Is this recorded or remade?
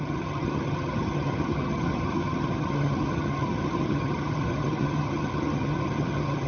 remade